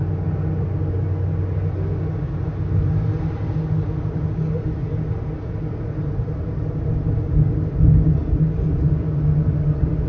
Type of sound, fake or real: real